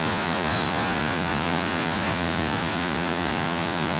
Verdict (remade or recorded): remade